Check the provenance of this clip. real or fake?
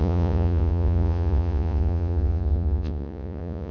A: fake